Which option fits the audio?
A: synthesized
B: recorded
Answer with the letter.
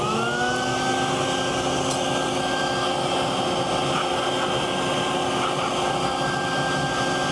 B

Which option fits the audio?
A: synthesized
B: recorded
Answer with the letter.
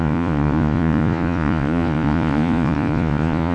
A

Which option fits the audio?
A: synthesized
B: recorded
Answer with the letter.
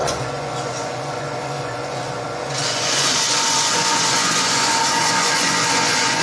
A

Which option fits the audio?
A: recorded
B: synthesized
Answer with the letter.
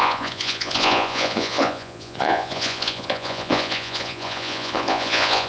B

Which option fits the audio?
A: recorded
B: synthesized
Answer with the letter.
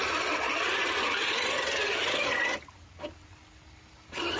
A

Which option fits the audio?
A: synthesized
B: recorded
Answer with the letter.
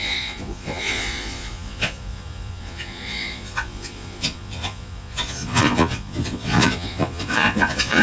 A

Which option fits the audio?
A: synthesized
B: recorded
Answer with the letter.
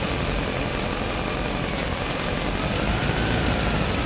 B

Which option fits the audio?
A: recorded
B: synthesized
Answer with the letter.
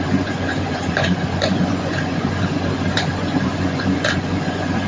B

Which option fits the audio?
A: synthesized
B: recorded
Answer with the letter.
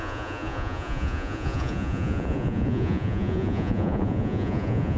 A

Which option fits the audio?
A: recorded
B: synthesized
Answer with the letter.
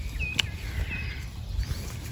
A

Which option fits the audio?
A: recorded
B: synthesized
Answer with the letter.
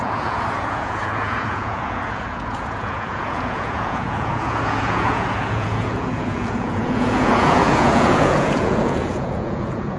B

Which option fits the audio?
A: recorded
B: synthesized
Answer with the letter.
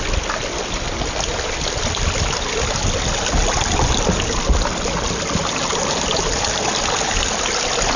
A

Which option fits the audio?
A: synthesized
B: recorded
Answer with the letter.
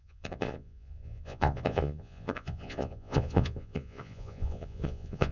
A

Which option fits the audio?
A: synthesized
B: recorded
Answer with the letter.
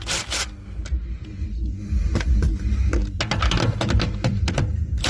B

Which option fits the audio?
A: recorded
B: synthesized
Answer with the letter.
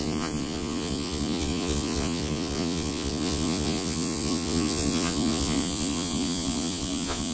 B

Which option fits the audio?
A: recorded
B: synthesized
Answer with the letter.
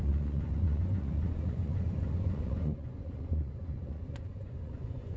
B